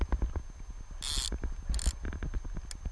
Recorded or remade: recorded